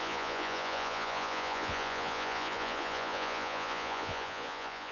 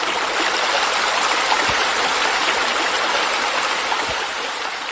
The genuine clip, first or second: second